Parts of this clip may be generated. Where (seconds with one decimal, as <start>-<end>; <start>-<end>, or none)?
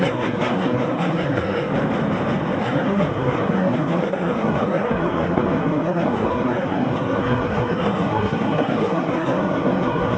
0.0-1.7; 2.6-10.2